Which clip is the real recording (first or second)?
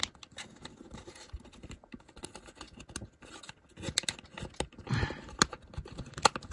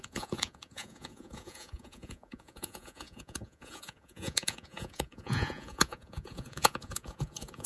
first